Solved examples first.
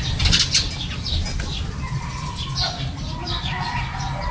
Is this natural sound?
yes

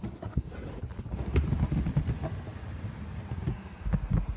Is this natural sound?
yes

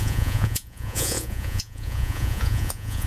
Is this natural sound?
no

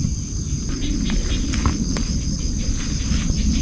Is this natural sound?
yes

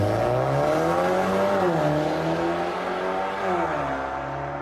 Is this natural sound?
yes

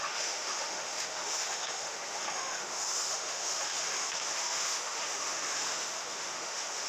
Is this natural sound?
no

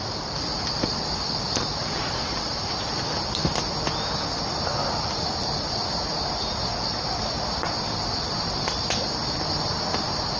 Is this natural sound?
yes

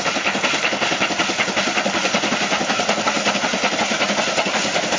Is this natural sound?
yes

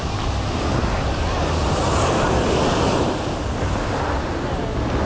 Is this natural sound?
yes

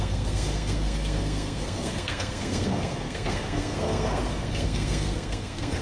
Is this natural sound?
no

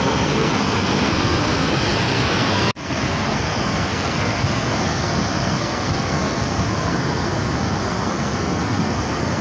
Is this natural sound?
no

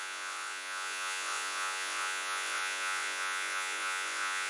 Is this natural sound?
no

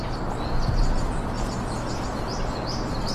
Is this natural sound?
yes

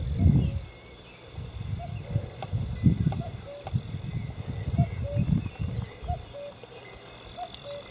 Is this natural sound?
yes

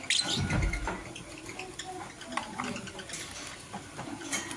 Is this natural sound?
yes